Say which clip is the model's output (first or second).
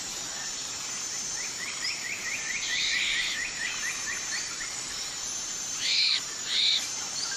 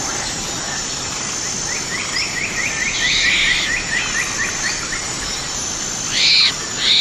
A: first